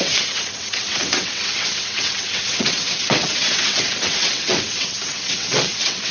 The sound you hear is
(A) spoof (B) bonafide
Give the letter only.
A